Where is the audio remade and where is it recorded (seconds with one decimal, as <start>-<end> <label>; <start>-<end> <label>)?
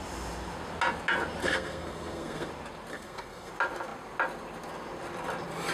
0.0-1.4 recorded; 1.4-2.5 remade; 2.5-2.9 recorded; 2.9-3.5 remade; 3.5-5.7 recorded